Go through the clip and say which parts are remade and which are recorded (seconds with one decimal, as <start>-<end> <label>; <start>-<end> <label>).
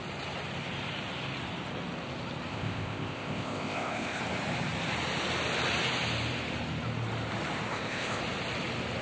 0.0-2.5 recorded; 2.5-4.2 remade; 4.2-7.7 recorded; 7.7-8.2 remade; 8.2-9.0 recorded